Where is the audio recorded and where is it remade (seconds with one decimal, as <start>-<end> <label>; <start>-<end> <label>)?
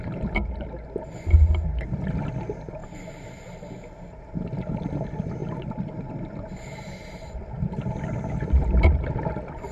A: 0.0-9.7 recorded